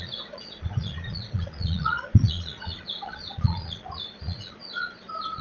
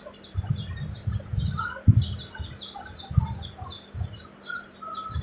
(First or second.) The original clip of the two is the second